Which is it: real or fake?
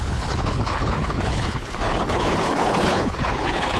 fake